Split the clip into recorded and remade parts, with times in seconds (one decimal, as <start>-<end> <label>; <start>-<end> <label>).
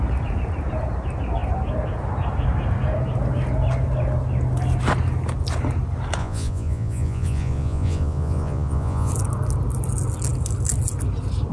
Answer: 0.0-6.2 recorded; 6.2-9.1 remade; 9.1-11.5 recorded